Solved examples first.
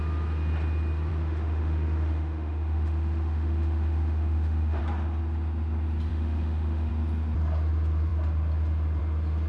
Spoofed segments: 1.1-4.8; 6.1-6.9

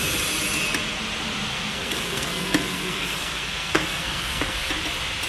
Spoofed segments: 1.5-4.7

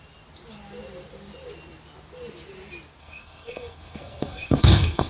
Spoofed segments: 3.0-5.1

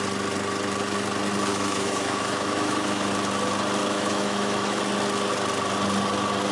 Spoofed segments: 1.5-3.1; 3.8-4.8